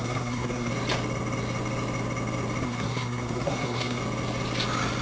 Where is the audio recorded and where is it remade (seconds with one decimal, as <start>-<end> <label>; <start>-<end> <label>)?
0.0-0.7 remade; 0.7-2.6 recorded; 2.6-4.0 remade; 4.0-5.0 recorded